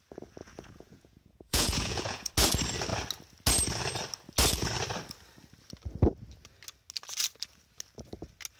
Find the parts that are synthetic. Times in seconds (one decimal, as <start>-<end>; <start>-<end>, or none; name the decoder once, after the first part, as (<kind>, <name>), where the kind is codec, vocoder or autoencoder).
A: 0.4-2.3 (vocoder, Vocos)